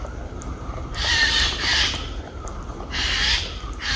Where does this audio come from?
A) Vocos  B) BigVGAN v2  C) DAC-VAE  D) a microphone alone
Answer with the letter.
B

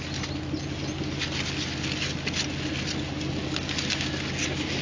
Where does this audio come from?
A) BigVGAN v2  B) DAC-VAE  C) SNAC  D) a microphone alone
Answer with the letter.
D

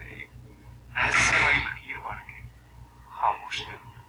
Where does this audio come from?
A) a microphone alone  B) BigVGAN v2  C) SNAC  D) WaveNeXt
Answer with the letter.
A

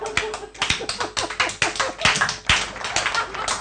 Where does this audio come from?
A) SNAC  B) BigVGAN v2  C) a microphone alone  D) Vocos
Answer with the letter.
C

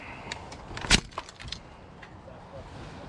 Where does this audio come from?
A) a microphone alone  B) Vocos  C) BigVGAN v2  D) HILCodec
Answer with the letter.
A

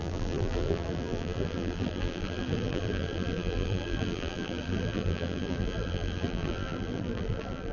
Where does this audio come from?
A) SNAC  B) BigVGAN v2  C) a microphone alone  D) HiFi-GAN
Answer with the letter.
B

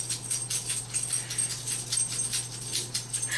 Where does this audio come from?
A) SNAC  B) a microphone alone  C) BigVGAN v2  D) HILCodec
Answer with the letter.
B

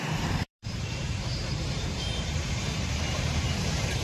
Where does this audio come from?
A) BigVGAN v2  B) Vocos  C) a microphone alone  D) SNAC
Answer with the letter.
A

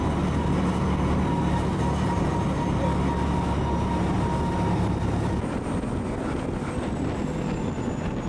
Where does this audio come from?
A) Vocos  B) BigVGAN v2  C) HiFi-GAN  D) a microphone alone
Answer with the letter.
D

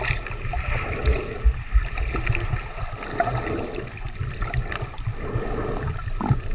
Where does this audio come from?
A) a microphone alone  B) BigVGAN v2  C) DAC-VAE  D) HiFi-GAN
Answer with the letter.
A